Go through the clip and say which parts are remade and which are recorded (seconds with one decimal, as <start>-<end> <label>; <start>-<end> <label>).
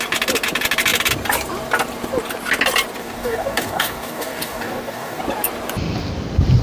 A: 0.0-3.0 recorded; 3.0-5.2 remade; 5.2-6.6 recorded